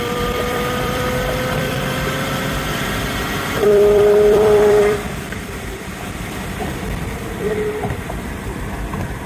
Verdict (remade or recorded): remade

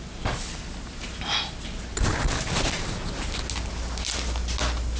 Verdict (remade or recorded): recorded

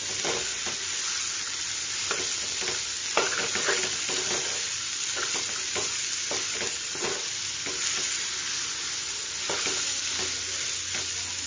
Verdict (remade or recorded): recorded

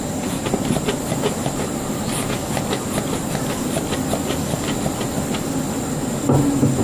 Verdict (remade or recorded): remade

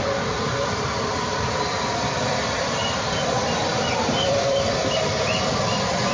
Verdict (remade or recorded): remade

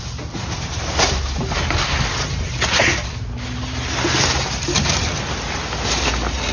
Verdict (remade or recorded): recorded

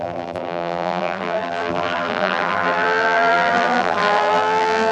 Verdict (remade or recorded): remade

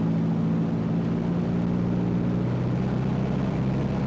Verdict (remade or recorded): recorded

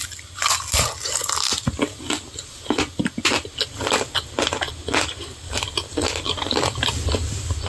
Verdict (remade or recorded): recorded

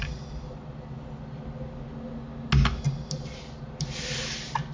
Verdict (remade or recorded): recorded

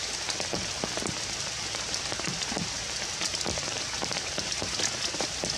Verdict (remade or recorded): recorded